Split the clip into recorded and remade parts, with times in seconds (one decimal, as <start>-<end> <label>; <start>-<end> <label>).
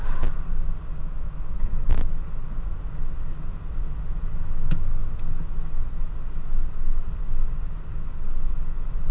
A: 0.0-1.0 recorded; 1.0-2.1 remade; 2.1-9.1 recorded